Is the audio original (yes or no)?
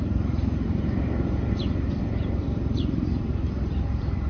no